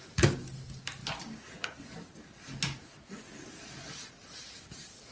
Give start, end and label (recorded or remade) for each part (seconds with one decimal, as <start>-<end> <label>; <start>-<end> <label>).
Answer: 0.0-5.1 recorded